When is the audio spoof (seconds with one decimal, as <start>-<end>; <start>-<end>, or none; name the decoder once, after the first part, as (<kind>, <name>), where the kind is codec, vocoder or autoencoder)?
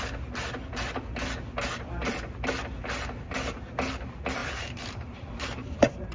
4.4-6.1 (vocoder, BigVGAN v2)